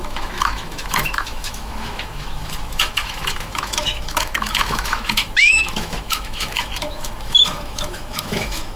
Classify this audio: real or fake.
fake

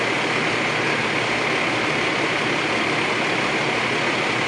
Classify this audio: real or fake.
real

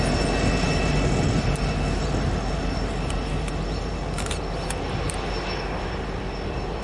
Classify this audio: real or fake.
real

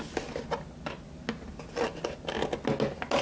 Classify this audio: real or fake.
real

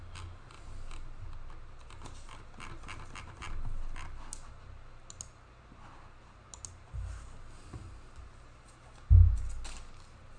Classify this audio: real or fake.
real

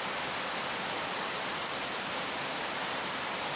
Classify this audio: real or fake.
real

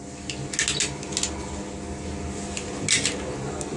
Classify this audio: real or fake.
real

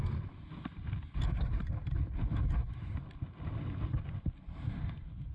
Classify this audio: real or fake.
real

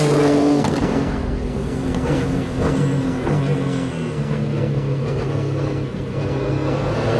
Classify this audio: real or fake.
fake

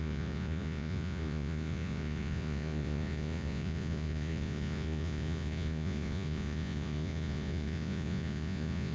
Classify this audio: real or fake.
fake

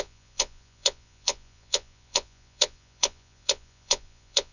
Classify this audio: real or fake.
fake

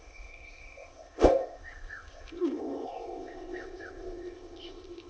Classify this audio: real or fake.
fake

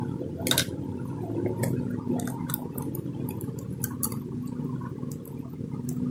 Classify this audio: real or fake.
real